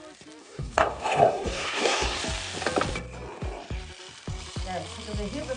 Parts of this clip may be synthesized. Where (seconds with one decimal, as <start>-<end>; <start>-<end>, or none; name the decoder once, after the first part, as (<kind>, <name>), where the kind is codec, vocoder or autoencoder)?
0.4-2.2 (codec, SNAC)